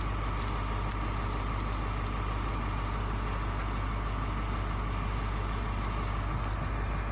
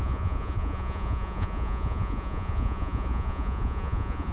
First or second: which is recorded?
first